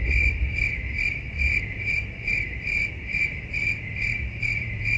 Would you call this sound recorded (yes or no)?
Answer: no